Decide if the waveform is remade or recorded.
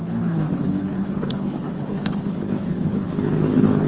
remade